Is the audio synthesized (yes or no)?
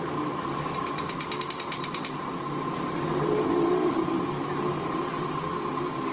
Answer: no